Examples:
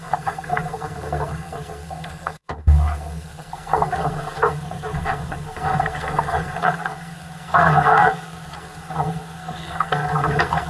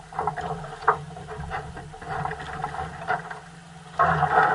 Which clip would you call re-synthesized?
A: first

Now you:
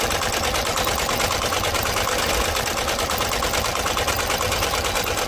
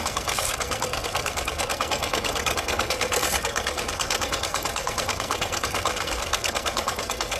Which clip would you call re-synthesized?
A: second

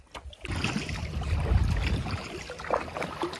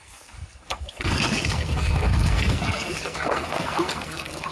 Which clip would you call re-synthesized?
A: second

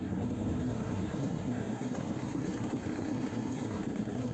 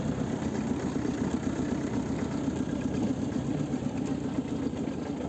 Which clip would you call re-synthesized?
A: first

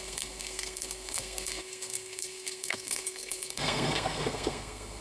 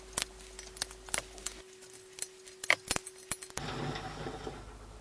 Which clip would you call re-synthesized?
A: first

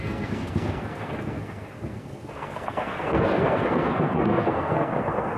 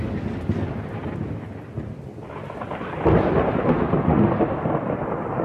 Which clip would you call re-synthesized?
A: first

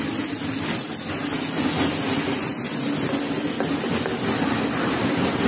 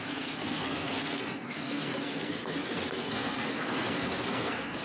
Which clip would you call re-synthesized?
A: second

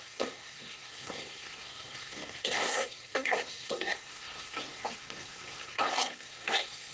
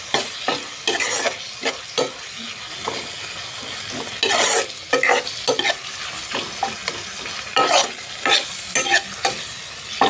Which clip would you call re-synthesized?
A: first